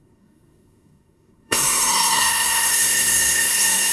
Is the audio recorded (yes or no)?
no